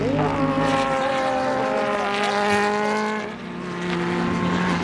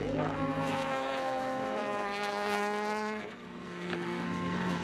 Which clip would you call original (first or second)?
first